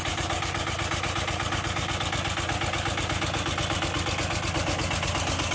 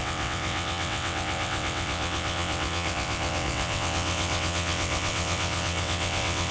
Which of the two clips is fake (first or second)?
second